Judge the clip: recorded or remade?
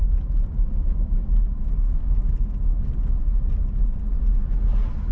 recorded